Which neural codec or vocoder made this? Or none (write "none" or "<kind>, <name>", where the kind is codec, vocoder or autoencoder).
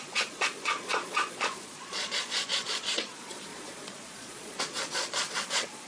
vocoder, Vocos